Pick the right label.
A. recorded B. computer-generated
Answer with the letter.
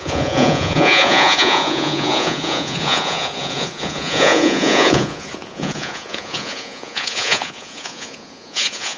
B